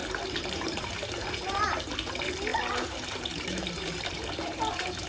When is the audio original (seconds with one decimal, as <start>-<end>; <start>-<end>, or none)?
1.9-2.5